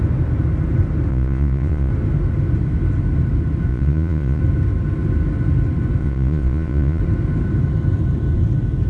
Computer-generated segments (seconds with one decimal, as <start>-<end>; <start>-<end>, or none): 1.1-1.9; 3.7-4.4; 6.0-7.0